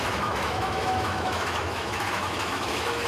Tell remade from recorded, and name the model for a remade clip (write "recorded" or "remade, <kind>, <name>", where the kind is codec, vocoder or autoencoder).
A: remade, autoencoder, DAC-VAE